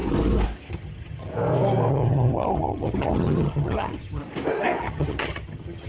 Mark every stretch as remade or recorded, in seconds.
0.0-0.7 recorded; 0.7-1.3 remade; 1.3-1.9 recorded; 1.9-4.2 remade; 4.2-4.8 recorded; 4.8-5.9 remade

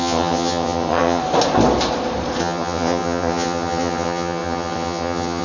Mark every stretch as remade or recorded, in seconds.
0.0-1.2 remade; 1.2-2.4 recorded; 2.4-5.4 remade

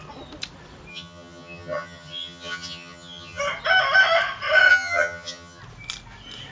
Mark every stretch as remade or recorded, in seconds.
0.0-0.9 recorded; 0.9-3.4 remade; 3.4-4.7 recorded; 4.7-5.6 remade; 5.6-6.5 recorded

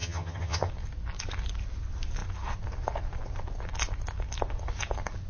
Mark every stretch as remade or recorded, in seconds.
0.0-0.7 remade; 0.7-5.3 recorded